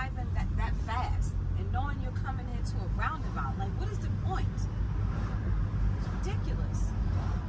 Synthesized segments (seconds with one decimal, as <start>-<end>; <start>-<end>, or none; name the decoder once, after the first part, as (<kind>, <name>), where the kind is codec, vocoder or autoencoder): none